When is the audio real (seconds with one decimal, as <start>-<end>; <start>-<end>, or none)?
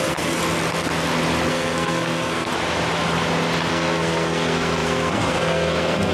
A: 0.4-1.5; 2.5-3.7